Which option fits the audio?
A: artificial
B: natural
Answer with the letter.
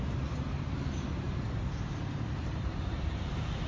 A